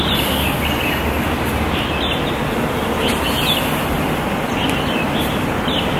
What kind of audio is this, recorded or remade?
recorded